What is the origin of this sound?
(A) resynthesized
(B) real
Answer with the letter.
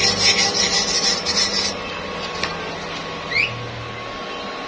B